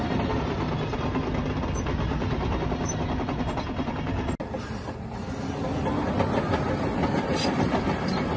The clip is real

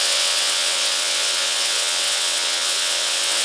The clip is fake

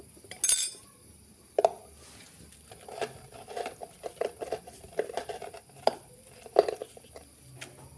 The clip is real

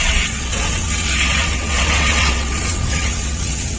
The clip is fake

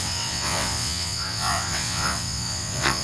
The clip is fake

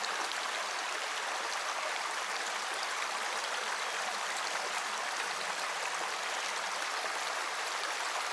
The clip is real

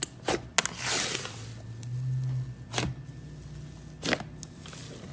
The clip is real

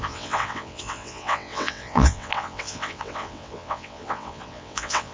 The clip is fake